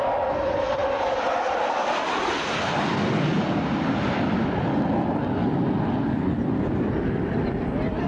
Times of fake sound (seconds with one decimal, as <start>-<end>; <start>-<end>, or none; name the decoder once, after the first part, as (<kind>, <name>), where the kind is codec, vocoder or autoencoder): none